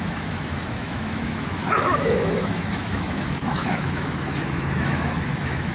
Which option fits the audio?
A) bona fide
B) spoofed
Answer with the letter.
B